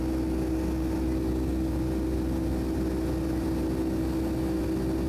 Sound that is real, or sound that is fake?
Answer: real